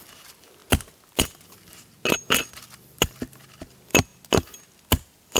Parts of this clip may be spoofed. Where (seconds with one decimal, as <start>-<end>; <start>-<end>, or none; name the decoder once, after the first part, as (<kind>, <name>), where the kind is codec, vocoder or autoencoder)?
0.0-0.6 (vocoder, BigVGAN v2); 2.1-4.1; 4.9-5.4